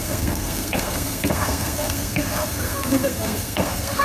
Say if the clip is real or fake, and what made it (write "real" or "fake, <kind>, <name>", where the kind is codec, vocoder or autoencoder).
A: fake, codec, SNAC